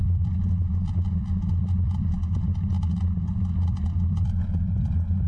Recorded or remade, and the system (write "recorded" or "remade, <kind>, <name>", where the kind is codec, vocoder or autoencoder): recorded